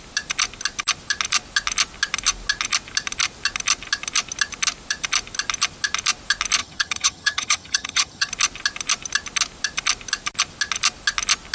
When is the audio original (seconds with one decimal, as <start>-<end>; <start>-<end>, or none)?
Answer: 0.0-6.6; 8.3-11.5